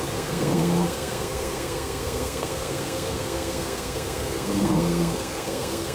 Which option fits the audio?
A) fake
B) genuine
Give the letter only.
A